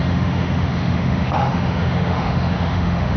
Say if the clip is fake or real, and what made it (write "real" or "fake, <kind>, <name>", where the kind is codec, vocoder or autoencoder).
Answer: fake, autoencoder, DAC-VAE